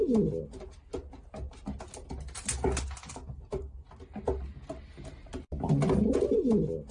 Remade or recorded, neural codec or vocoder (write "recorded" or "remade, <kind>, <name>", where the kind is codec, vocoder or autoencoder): recorded